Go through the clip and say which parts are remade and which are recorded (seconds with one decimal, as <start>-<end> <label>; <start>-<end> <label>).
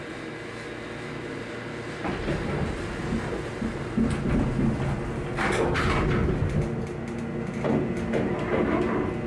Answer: 0.0-9.3 recorded